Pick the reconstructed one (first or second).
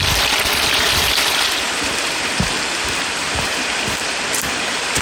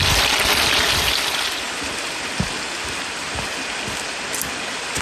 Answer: first